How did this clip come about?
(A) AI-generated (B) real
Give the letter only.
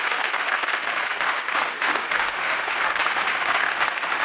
A